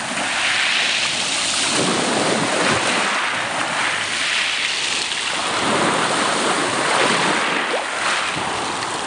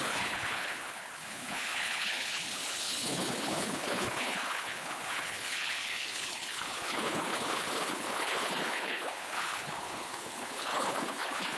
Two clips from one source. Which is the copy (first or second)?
second